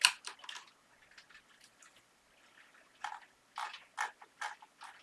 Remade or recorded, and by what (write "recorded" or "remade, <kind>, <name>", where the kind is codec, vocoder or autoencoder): recorded